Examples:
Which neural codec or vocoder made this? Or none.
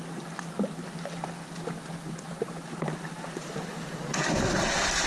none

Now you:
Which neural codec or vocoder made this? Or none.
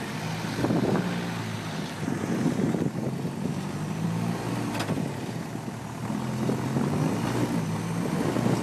none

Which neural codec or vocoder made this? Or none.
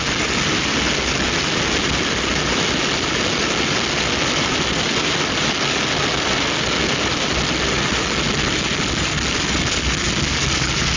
none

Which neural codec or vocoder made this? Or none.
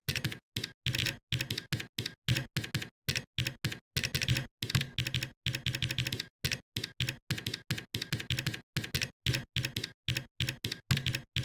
none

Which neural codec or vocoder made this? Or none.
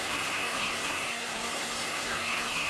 codec, SNAC